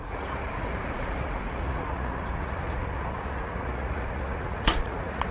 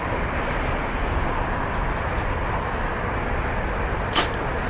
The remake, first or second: first